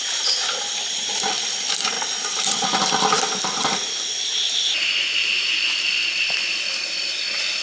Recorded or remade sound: recorded